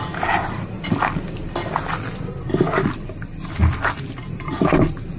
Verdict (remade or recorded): recorded